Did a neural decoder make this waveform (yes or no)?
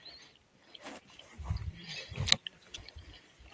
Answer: no